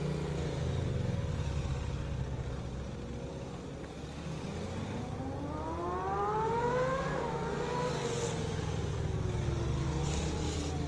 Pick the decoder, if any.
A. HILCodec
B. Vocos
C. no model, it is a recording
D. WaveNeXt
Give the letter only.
C